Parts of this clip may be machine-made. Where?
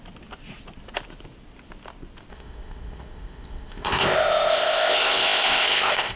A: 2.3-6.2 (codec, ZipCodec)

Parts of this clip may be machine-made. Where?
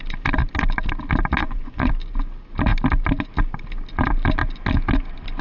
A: 1.4-1.9 (vocoder, Vocos)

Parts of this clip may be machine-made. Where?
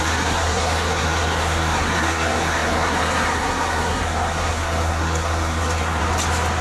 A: 0.0-6.0 (codec, SNAC)